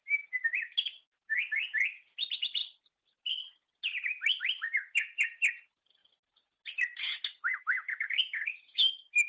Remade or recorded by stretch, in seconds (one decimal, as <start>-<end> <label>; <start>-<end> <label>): 0.0-9.3 recorded